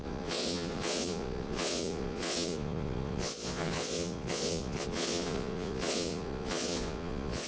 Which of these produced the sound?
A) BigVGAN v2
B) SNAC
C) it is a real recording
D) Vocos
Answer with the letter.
D